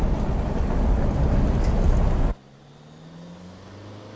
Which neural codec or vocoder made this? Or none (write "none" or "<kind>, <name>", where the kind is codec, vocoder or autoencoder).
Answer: none